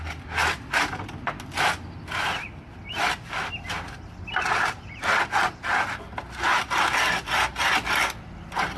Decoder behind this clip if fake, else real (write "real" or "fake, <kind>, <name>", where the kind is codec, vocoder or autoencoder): real